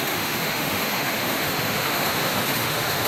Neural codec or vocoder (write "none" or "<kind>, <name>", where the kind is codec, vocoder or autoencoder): autoencoder, DAC-VAE